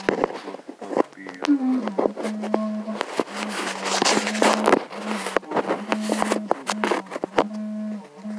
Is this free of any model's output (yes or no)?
yes